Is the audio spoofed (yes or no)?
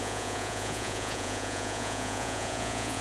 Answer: yes